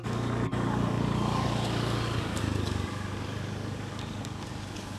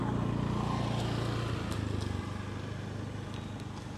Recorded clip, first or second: second